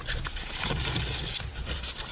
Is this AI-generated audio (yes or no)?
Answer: no